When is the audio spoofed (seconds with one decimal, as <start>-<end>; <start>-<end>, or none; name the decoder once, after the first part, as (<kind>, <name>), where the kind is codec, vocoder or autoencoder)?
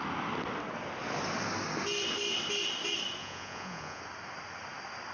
3.2-4.0 (vocoder, Vocos)